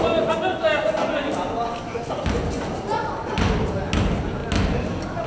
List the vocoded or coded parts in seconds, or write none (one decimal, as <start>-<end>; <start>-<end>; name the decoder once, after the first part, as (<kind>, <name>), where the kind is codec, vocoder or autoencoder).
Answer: none